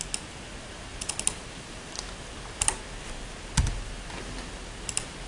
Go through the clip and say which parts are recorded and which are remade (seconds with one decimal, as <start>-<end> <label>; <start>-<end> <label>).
0.0-5.3 recorded